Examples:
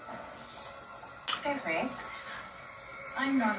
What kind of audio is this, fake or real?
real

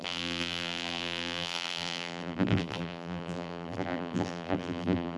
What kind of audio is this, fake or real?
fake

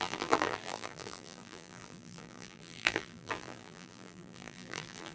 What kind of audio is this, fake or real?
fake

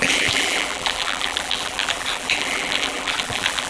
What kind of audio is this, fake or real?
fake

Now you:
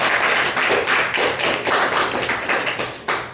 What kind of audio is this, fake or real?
real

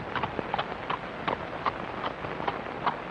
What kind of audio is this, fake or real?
real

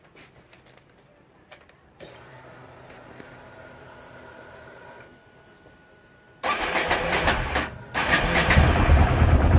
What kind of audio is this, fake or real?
fake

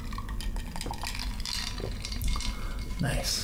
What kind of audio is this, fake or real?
real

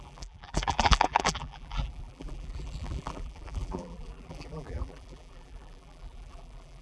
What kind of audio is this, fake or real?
fake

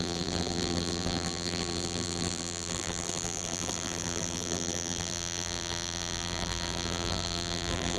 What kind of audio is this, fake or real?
fake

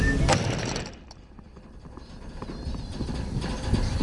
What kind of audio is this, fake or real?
real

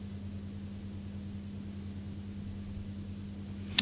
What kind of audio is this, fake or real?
real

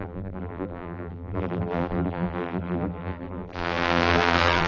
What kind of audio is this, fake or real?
fake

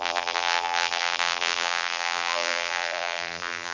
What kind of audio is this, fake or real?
fake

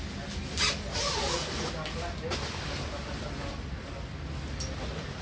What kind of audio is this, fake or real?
real